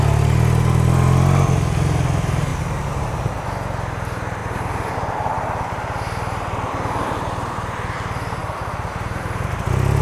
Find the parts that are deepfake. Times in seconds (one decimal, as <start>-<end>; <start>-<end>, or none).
2.5-3.3; 4.4-4.9; 8.4-9.6